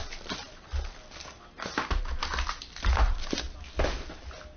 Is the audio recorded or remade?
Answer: recorded